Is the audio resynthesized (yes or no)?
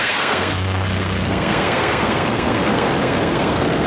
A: yes